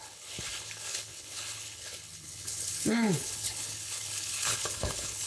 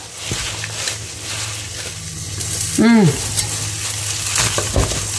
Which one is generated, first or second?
first